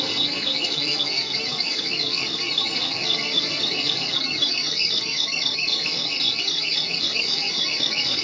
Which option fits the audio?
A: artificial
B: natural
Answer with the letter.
A